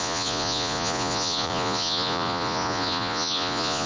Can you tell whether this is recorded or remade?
remade